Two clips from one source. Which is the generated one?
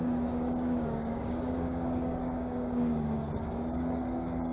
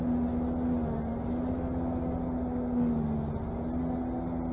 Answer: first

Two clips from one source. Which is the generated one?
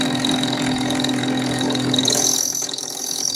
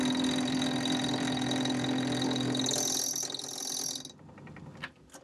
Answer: first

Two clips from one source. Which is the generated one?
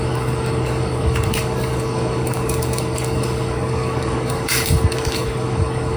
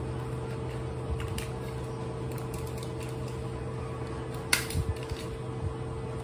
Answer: first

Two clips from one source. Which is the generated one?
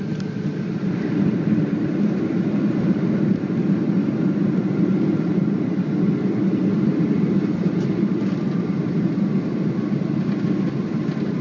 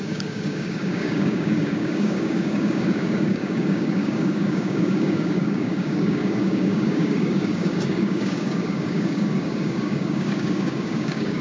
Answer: second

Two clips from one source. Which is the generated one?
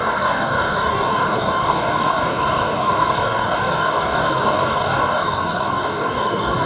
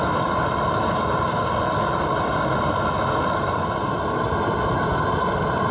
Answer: first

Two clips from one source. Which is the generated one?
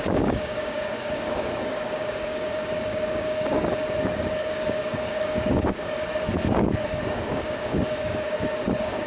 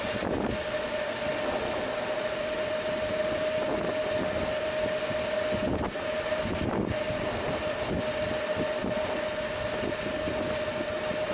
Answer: first